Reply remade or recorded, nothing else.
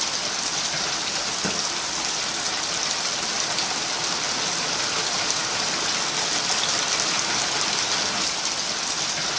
recorded